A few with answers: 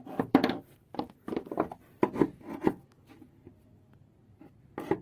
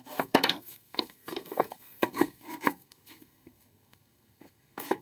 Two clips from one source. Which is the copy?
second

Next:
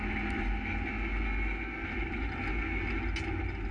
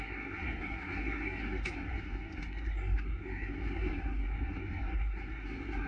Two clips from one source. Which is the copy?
second